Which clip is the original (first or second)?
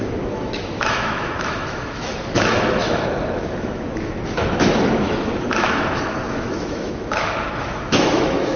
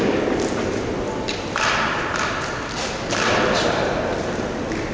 second